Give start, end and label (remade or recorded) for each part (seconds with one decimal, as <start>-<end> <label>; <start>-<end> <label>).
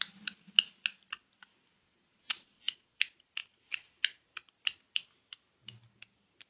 0.0-1.7 recorded; 1.7-3.0 remade; 3.0-3.4 recorded; 3.4-4.0 remade; 4.0-6.5 recorded